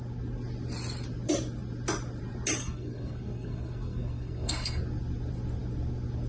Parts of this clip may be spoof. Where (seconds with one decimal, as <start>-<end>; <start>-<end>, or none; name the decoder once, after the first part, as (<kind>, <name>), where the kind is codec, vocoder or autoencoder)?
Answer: 2.6-4.8 (codec, SNAC)